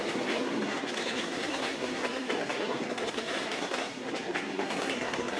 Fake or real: fake